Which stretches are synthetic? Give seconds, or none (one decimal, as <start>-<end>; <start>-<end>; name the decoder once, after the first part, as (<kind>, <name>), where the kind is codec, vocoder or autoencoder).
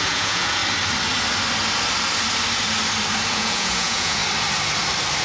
0.0-0.6 (vocoder, Vocos); 3.3-4.2